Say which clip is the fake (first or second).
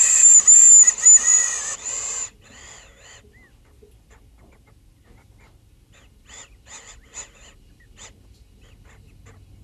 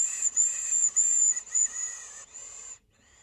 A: second